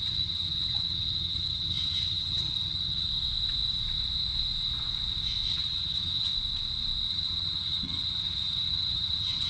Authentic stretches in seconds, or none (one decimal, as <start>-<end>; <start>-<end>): 3.1-5.5; 6.3-7.1